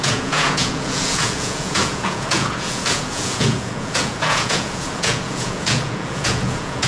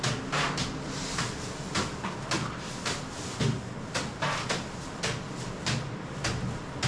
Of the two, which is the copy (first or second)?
first